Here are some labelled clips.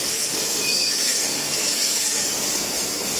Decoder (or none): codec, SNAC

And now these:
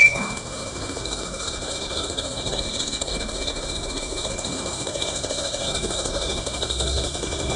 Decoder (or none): codec, SNAC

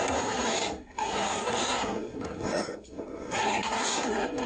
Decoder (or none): codec, SNAC